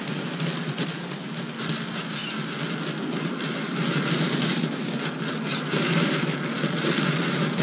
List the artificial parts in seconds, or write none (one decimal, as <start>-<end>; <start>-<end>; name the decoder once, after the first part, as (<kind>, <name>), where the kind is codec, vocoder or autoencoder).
none